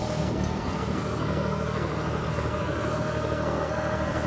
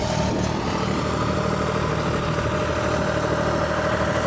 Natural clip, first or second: second